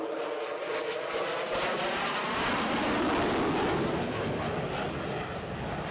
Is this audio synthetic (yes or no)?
no